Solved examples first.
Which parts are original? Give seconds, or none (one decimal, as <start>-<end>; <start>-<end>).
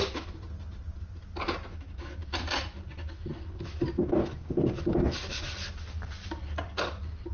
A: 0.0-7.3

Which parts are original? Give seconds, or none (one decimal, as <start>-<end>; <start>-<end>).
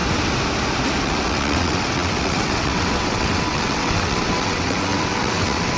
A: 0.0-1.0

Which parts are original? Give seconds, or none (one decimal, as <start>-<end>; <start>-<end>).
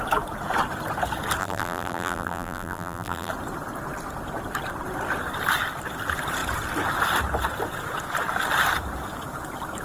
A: 0.0-1.4; 3.3-9.8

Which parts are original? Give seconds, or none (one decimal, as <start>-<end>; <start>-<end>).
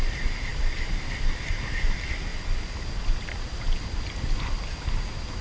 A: 0.0-5.4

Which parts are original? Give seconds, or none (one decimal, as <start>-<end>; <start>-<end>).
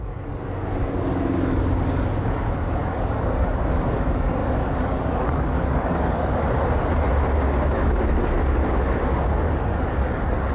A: 6.3-7.6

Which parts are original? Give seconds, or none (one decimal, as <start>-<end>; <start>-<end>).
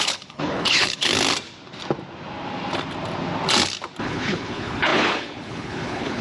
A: 1.1-4.0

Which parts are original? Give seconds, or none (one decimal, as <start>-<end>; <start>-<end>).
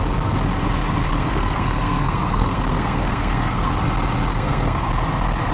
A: 0.0-1.1; 3.7-4.3; 4.9-5.5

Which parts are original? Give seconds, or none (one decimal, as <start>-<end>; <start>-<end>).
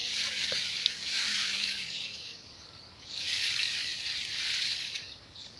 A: 3.9-4.6